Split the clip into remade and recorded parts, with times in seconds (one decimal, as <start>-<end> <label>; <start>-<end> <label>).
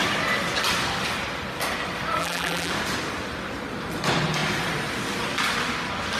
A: 0.0-2.2 recorded; 2.2-2.7 remade; 2.7-6.2 recorded